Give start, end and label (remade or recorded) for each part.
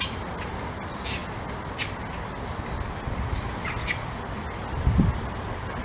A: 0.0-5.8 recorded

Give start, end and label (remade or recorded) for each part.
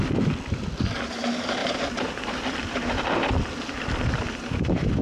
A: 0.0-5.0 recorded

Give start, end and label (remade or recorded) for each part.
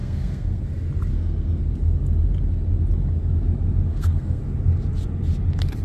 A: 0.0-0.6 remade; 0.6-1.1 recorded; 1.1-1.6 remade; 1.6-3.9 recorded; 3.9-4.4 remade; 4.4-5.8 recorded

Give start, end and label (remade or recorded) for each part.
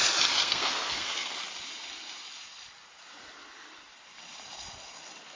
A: 0.0-0.4 recorded; 0.4-1.3 remade; 1.3-5.4 recorded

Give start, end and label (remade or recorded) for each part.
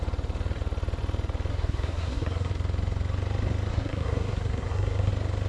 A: 0.0-1.5 recorded; 1.5-2.5 remade; 2.5-3.7 recorded; 3.7-5.1 remade; 5.1-5.5 recorded